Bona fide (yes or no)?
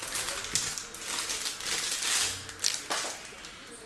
yes